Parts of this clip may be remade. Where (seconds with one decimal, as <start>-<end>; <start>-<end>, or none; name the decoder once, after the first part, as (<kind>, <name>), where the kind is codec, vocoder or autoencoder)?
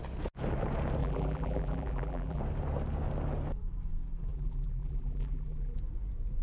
1.0-2.4 (vocoder, BigVGAN v2); 4.3-5.8